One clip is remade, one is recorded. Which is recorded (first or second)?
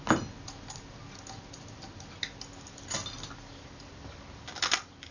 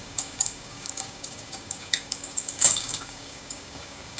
first